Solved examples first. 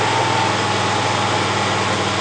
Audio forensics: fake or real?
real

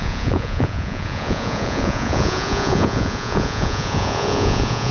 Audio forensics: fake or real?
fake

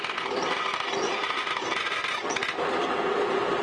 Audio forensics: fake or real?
real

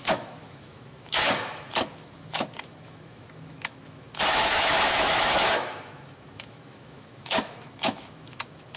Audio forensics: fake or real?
fake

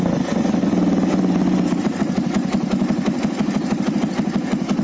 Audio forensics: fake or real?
real